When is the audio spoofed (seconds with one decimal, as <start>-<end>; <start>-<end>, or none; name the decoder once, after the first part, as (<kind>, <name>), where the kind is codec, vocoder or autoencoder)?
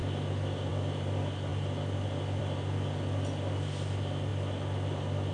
none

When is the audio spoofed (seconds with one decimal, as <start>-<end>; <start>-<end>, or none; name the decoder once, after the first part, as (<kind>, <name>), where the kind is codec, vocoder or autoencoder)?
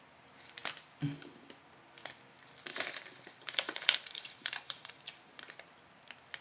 2.7-4.9 (vocoder, BigVGAN v2)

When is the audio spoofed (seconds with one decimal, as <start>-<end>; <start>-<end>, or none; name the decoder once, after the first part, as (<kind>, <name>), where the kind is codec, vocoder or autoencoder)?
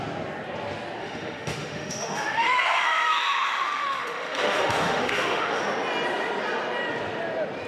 1.0-5.6 (autoencoder, DAC-VAE)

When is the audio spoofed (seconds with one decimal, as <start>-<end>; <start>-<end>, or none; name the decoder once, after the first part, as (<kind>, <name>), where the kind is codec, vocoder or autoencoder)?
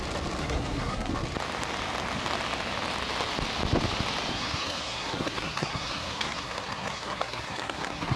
0.4-1.1 (codec, SNAC); 4.3-8.2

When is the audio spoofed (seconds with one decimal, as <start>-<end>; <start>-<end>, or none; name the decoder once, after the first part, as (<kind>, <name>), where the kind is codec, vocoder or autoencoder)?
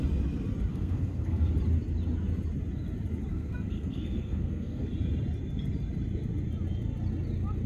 0.7-1.5 (codec, SNAC); 3.3-4.9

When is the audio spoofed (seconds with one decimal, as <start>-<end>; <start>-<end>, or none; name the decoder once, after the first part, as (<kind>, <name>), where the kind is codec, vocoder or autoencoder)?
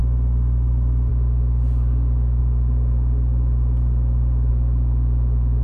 none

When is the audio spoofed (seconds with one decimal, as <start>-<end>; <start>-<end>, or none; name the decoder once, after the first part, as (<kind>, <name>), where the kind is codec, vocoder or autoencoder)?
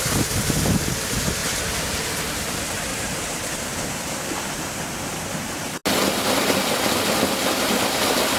2.9-5.0 (vocoder, BigVGAN v2)